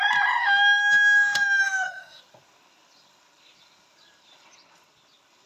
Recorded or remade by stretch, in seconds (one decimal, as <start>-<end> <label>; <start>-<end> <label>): 0.0-0.4 recorded; 0.4-2.2 remade; 2.2-5.5 recorded